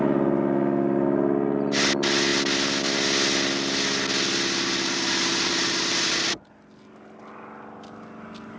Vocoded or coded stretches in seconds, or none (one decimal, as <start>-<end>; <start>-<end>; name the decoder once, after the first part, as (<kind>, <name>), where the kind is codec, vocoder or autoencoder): none